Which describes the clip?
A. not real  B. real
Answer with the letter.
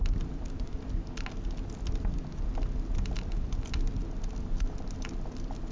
B